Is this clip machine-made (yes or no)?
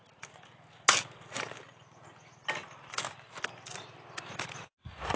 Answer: no